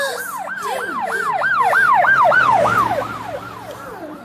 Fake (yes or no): no